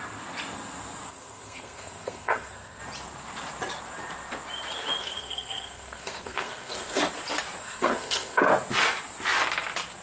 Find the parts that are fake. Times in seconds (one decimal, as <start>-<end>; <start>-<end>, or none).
1.1-2.8; 5.0-7.0; 7.6-8.5

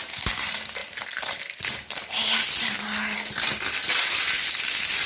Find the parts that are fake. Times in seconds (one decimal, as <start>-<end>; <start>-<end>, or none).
none

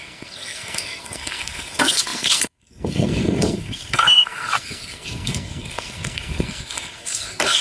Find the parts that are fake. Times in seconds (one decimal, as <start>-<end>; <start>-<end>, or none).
0.0-7.6

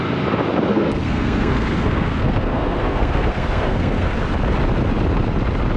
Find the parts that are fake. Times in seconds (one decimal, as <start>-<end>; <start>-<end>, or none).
0.7-4.2

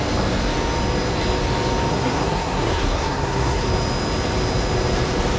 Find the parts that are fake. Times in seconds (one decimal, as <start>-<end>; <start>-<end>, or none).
1.9-3.6

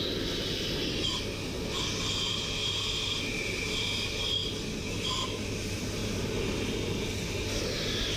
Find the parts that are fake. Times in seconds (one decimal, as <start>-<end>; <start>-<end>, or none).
none

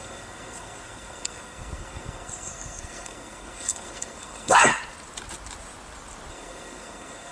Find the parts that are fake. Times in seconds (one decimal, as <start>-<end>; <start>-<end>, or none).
0.0-4.7; 6.3-7.3

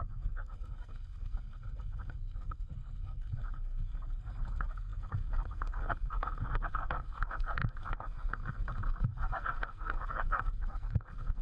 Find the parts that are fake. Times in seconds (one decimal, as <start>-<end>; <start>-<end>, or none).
0.0-11.4